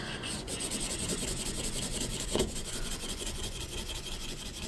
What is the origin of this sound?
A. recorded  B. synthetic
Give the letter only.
B